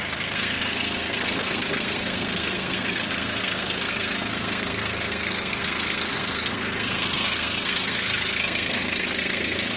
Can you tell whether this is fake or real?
fake